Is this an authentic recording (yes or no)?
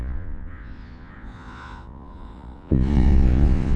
no